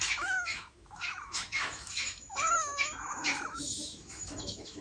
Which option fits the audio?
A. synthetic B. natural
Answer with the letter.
A